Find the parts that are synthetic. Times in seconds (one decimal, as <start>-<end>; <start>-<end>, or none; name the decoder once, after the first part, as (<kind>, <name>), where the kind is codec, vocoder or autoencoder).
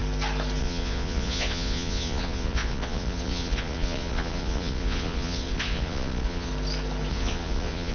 0.6-6.5 (vocoder, Vocos); 7.1-7.9